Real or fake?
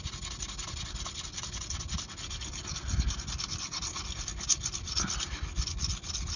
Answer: real